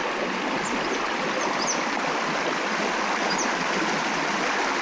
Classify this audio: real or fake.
real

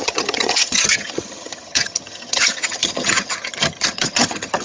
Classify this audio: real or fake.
fake